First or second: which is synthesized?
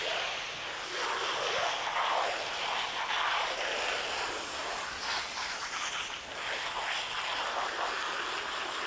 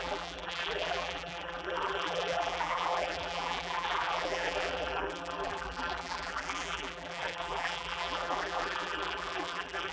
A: second